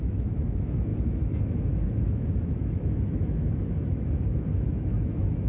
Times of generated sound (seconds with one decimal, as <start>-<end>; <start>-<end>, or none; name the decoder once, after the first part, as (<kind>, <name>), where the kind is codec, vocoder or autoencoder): 0.0-5.5 (autoencoder, DAC-VAE)